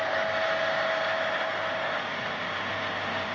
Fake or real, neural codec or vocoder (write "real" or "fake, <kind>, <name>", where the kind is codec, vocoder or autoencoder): real